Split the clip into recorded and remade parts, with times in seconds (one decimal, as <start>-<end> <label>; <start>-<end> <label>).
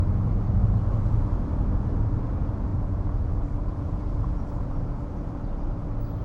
0.0-2.7 recorded; 2.7-4.7 remade; 4.7-6.2 recorded